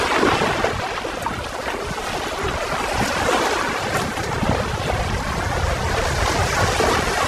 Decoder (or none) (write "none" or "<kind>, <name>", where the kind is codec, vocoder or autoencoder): none